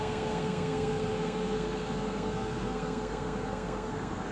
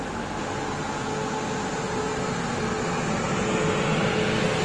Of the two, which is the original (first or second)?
second